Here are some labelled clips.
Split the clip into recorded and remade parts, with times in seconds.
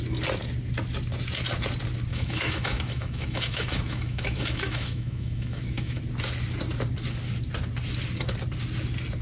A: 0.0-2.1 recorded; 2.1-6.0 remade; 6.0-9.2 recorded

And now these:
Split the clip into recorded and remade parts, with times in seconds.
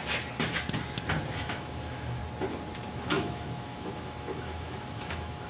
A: 0.0-1.3 recorded; 1.3-2.2 remade; 2.2-2.9 recorded; 2.9-5.5 remade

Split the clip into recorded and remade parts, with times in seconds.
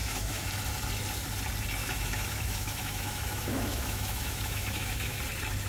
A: 0.0-0.5 remade; 0.5-1.8 recorded; 1.8-5.2 remade; 5.2-5.7 recorded